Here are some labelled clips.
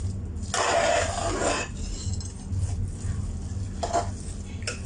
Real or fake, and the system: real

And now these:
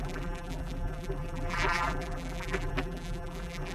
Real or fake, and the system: fake, vocoder, BigVGAN v2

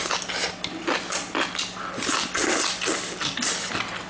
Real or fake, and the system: real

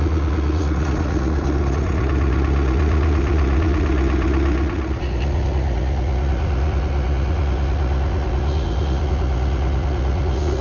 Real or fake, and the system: fake, vocoder, Vocos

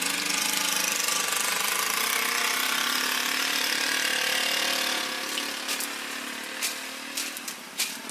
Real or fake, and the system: real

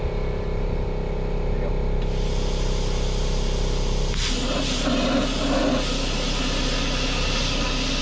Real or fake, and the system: real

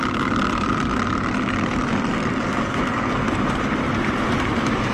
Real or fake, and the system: real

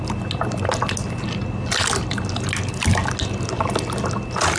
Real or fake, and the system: real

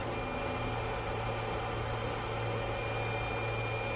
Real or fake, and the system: real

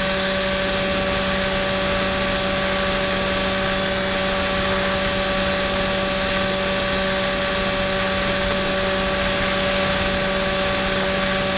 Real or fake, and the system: real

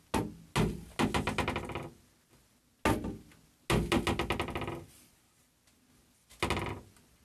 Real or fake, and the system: real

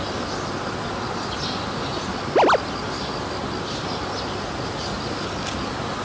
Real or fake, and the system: real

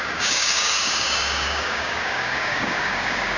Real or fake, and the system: fake, codec, DAC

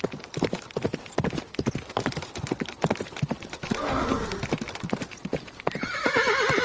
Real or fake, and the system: real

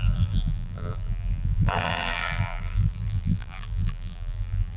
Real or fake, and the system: fake, vocoder, BigVGAN v2